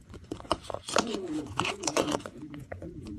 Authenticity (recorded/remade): remade